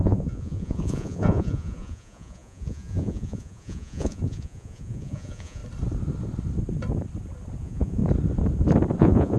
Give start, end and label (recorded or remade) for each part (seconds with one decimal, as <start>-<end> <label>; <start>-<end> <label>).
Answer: 0.0-5.6 remade; 5.6-7.6 recorded; 7.6-8.0 remade; 8.0-9.0 recorded; 9.0-9.4 remade

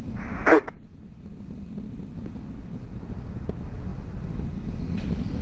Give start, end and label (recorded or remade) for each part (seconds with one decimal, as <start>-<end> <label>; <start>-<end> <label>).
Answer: 0.0-5.4 recorded

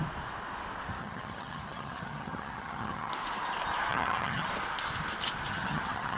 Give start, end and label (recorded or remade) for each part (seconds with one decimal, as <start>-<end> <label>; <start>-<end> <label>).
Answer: 0.0-1.0 recorded; 1.0-3.1 remade; 3.1-3.9 recorded; 3.9-4.5 remade; 4.5-5.5 recorded; 5.5-6.2 remade

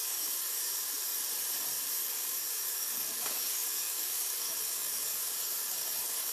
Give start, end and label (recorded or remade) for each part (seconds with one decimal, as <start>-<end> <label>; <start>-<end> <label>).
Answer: 0.0-1.1 remade; 1.1-1.9 recorded; 1.9-6.3 remade

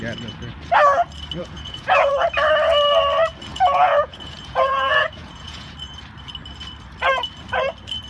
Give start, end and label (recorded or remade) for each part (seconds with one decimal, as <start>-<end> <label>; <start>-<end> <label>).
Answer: 0.0-1.4 recorded; 1.4-2.1 remade; 2.1-3.5 recorded; 3.5-5.7 remade; 5.7-8.1 recorded

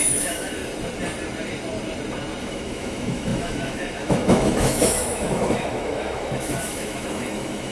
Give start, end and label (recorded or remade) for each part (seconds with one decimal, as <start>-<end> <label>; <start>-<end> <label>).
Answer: 0.0-0.6 remade; 0.6-2.4 recorded; 2.4-7.7 remade